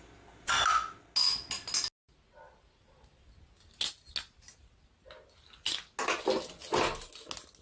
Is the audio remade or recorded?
recorded